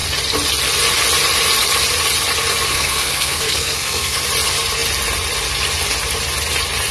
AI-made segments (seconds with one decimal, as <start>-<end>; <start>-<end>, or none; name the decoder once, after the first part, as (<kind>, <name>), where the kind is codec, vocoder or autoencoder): 2.7-4.2 (codec, SNAC)